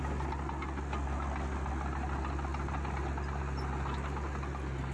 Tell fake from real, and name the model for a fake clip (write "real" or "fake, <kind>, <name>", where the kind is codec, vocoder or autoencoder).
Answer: real